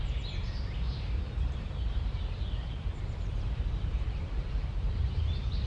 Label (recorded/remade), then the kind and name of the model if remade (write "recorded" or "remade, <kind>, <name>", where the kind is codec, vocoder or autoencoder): remade, vocoder, BigVGAN v2